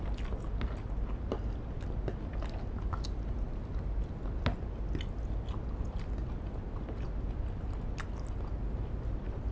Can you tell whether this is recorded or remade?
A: recorded